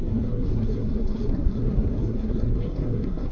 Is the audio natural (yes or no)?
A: no